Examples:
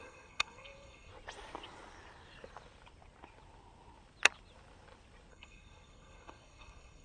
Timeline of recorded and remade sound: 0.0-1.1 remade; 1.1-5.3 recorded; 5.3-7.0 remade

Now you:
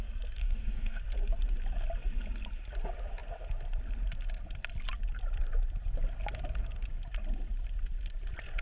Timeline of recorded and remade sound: 0.0-0.4 recorded; 0.4-1.0 remade; 1.0-8.6 recorded